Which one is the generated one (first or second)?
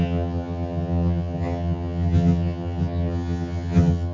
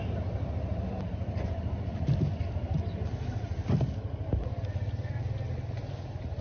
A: first